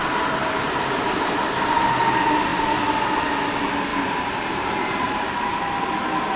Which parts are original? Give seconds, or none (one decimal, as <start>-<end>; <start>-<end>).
0.0-3.9; 5.3-6.4